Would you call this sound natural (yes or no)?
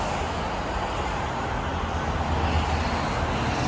yes